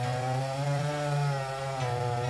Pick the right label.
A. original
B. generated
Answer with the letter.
A